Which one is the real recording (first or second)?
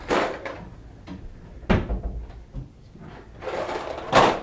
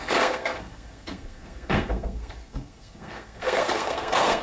first